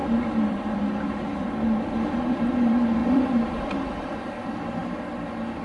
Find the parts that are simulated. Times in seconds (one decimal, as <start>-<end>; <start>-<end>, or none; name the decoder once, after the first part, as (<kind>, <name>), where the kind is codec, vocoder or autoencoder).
0.0-2.3 (vocoder, BigVGAN v2); 3.0-4.2